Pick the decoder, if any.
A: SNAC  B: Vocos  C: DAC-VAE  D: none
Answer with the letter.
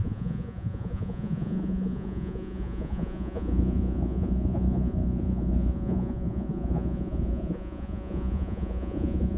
B